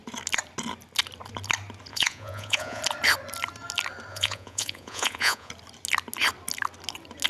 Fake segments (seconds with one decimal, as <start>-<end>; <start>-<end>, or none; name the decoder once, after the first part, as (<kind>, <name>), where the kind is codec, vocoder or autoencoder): 1.9-2.8 (vocoder, Vocos); 4.1-5.5

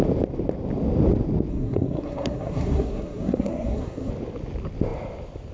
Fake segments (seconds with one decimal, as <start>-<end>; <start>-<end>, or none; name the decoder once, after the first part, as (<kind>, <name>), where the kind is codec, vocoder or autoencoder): 1.5-4.1 (codec, SNAC)